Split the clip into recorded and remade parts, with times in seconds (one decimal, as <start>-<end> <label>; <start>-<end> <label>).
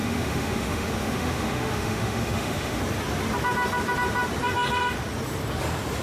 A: 0.0-2.8 remade; 2.8-6.0 recorded